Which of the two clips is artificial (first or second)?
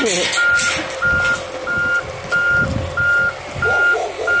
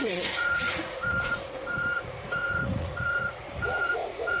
second